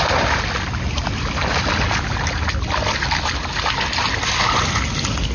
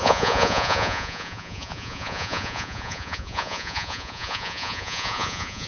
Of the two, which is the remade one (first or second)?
second